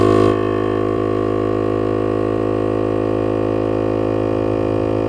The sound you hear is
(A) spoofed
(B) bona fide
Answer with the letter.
B